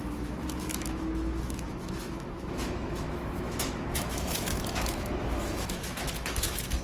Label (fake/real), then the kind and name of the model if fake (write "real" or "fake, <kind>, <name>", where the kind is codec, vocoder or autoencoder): fake, autoencoder, DAC-VAE